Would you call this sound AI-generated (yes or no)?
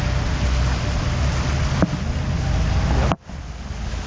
no